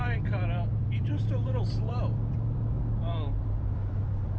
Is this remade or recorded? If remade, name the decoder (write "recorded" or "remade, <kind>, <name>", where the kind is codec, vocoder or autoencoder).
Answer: remade, vocoder, BigVGAN v2